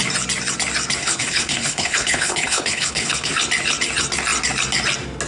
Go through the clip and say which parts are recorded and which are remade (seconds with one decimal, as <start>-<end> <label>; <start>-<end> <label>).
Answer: 0.0-1.0 recorded; 1.0-3.3 remade; 3.3-5.3 recorded